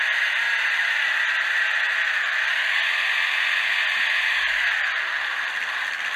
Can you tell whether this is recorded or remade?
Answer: recorded